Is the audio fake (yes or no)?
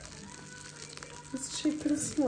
no